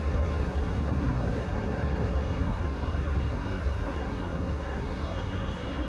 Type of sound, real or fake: fake